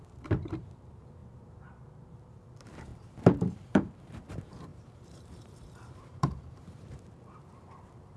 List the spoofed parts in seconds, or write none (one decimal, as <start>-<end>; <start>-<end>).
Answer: 0.0-8.2